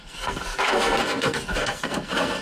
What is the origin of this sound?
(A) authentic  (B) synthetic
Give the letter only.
B